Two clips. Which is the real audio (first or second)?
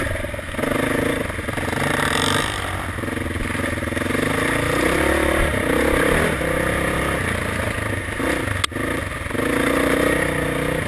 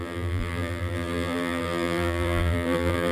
first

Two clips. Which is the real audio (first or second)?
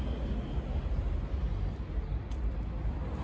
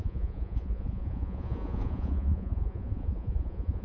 first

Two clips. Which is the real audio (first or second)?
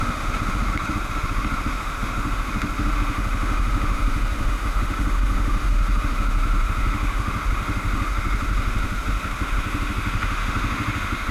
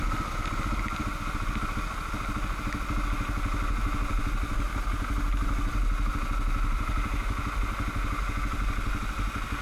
second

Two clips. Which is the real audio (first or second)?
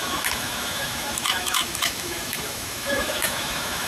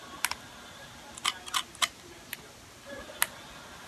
second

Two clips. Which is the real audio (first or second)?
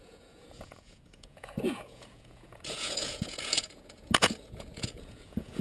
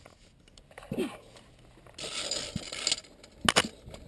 second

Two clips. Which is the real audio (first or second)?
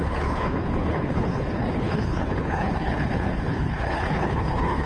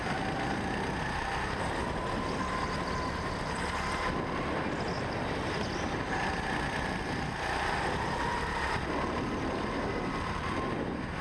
second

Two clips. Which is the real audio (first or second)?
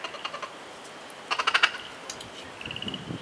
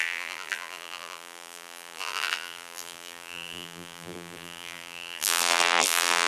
first